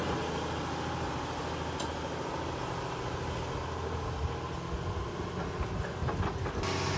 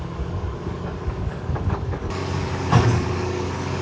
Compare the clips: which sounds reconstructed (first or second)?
second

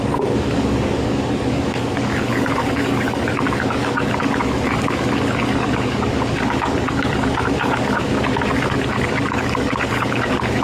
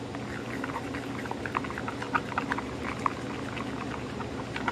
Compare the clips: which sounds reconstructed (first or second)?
first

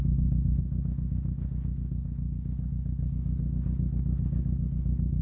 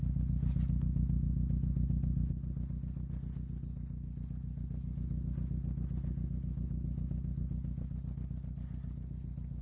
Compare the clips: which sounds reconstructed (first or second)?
first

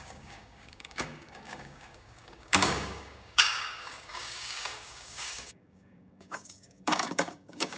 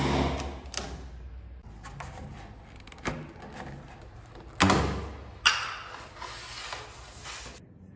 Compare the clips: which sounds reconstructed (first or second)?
first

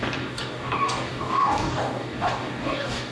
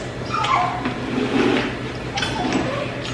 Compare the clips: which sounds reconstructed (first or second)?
first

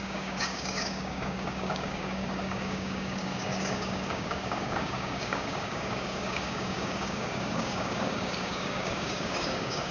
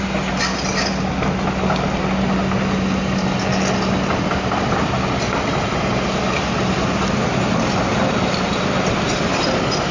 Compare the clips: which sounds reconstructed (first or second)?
first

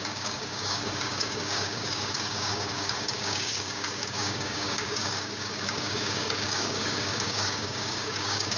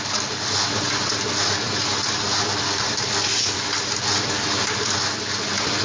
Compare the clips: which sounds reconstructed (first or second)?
first